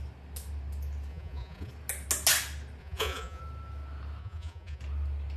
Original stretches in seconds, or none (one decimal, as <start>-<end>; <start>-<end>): 0.0-1.1; 1.7-2.8; 3.4-4.2; 4.8-5.4